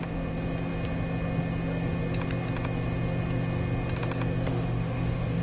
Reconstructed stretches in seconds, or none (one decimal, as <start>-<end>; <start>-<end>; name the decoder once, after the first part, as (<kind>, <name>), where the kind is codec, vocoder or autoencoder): 4.5-5.4 (codec, DAC)